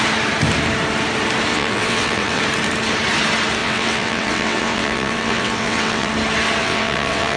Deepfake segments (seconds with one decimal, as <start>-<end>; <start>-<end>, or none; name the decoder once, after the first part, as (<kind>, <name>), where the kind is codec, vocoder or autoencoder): 1.5-2.4 (vocoder, WaveNeXt); 3.6-6.1; 6.6-7.4